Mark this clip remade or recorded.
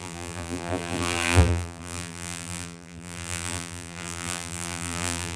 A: remade